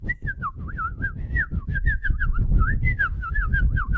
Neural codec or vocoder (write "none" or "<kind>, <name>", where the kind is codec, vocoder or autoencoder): none